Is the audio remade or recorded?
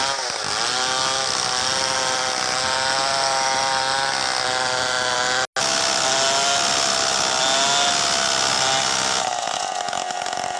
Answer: recorded